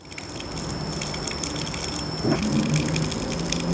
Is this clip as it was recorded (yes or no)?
yes